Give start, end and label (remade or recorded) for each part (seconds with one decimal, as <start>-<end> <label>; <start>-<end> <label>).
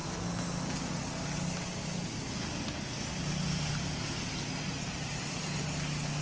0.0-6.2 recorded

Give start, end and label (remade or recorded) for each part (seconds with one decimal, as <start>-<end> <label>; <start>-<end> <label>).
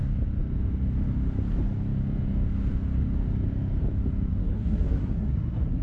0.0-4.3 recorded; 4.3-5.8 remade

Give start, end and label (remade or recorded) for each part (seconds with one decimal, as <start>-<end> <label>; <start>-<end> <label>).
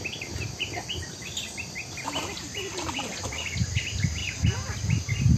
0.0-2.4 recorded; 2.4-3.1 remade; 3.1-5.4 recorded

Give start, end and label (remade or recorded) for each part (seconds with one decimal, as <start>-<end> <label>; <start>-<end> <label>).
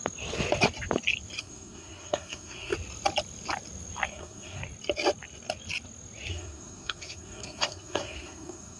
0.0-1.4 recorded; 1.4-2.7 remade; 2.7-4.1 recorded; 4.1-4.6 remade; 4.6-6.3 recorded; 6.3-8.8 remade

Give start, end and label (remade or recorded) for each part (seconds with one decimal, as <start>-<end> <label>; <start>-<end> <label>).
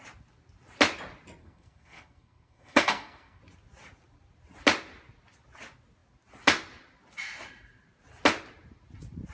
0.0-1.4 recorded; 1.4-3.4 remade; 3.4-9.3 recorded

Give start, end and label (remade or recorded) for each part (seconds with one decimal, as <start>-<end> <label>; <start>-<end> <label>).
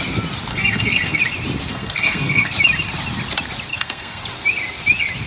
0.0-0.5 recorded; 0.5-1.2 remade; 1.2-1.7 recorded; 1.7-2.5 remade; 2.5-3.7 recorded; 3.7-4.2 remade; 4.2-5.3 recorded